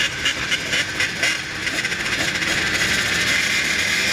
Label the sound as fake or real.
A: real